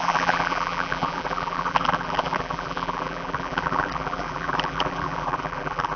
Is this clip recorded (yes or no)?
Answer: no